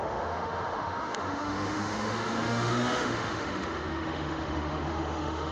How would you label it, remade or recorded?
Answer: remade